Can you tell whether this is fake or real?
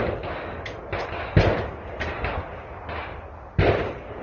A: real